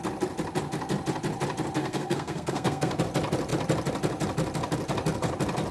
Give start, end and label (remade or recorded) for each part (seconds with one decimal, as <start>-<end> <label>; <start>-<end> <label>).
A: 0.0-1.8 recorded; 1.8-3.0 remade; 3.0-5.7 recorded